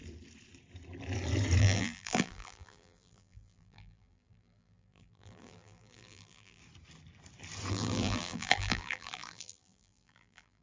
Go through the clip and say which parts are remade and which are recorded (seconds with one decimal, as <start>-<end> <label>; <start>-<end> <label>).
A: 0.0-1.6 recorded; 1.6-6.6 remade; 6.6-7.7 recorded; 7.7-10.6 remade